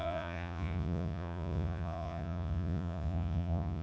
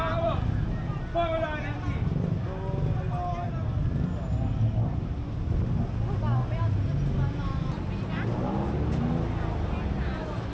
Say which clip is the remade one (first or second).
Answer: first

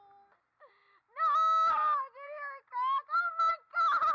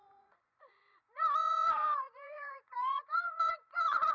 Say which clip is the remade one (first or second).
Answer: second